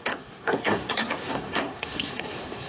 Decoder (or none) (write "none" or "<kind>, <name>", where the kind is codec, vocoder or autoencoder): codec, SNAC